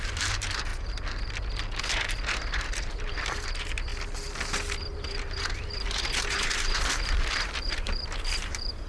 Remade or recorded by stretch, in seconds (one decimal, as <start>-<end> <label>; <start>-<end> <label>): 0.0-0.7 remade; 0.7-1.8 recorded; 1.8-3.9 remade; 3.9-4.8 recorded; 4.8-8.9 remade